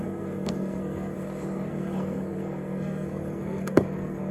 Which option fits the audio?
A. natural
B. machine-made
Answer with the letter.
B